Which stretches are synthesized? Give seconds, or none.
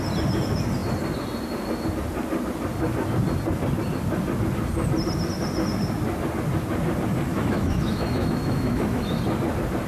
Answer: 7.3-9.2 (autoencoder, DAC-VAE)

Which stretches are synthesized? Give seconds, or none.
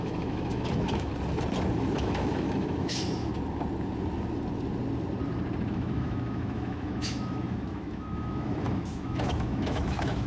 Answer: 0.0-1.1 (autoencoder, DAC-VAE); 1.9-3.3; 5.7-10.3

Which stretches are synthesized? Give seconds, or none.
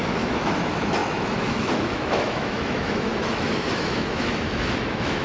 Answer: 0.0-5.2 (autoencoder, DAC-VAE)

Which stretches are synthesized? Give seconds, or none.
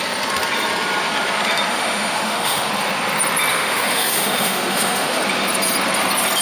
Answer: 1.7-2.7 (autoencoder, DAC-VAE); 3.5-5.2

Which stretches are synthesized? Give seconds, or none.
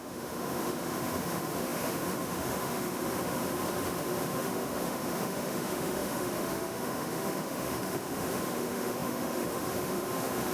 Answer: 0.0-10.5 (autoencoder, DAC-VAE)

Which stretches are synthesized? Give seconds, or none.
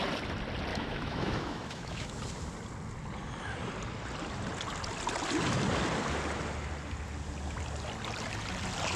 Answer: 0.7-2.2 (autoencoder, DAC-VAE)